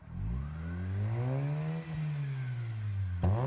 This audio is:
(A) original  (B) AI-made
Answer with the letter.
A